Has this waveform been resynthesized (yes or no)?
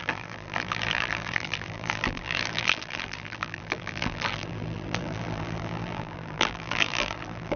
yes